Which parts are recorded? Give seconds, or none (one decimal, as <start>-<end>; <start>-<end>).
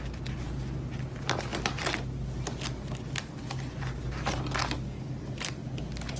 0.0-6.2